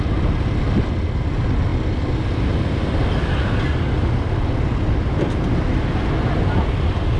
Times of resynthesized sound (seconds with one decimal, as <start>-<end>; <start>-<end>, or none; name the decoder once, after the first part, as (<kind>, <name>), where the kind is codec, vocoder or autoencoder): none